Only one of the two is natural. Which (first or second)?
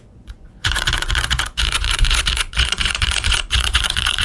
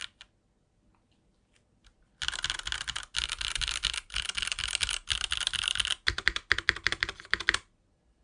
second